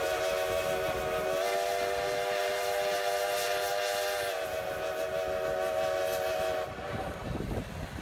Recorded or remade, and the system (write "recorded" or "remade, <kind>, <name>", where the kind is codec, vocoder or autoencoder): recorded